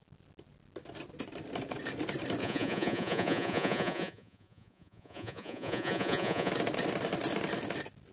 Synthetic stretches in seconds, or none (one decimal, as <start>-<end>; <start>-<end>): 2.4-6.5